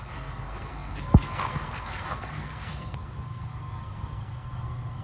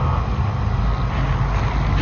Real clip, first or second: second